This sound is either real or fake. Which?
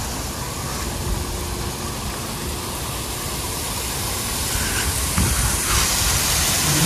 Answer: real